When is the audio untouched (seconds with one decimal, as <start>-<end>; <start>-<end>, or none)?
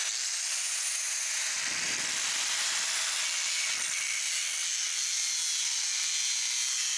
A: 0.0-0.6; 1.6-7.0